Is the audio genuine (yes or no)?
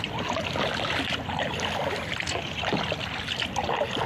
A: yes